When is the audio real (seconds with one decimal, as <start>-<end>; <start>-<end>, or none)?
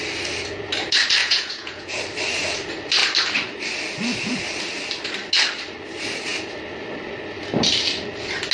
0.0-1.2; 2.0-8.5